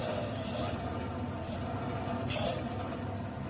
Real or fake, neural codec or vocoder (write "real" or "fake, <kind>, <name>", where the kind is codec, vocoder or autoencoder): real